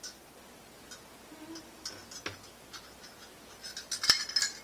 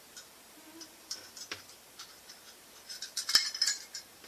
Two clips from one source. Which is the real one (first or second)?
first